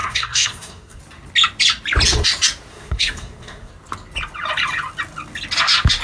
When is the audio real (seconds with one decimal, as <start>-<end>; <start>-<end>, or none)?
1.0-2.7; 3.7-6.0